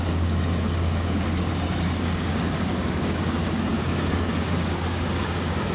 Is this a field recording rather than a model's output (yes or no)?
no